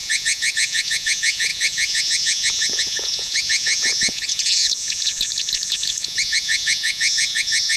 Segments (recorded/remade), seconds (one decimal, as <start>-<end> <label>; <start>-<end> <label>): 0.0-7.8 remade